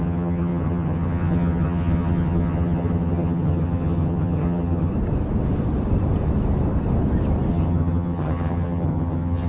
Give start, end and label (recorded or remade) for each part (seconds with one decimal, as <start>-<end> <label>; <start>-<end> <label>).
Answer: 0.0-4.9 remade; 4.9-7.5 recorded; 7.5-9.5 remade